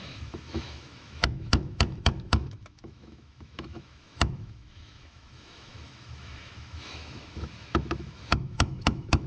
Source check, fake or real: fake